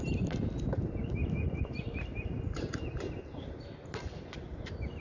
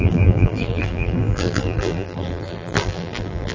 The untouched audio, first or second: first